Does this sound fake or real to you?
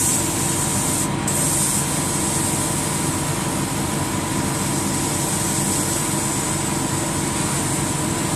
real